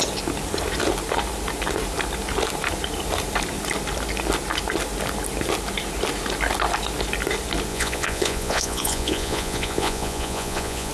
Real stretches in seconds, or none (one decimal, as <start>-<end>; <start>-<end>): 0.0-7.7